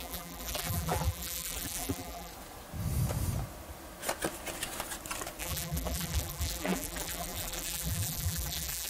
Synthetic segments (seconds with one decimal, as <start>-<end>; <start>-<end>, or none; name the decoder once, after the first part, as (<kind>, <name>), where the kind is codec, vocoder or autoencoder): 0.0-2.3 (vocoder, BigVGAN v2); 5.4-8.9